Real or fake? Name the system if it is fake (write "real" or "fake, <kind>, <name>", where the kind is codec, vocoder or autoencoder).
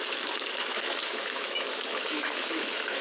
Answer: fake, autoencoder, DAC-VAE